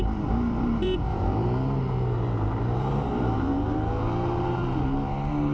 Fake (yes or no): yes